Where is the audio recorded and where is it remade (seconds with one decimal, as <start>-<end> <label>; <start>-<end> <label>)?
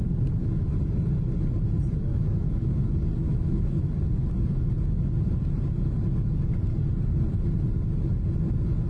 0.0-2.1 recorded; 2.1-2.8 remade; 2.8-3.3 recorded; 3.3-3.9 remade; 3.9-8.9 recorded